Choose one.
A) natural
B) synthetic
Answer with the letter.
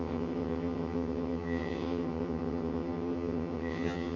B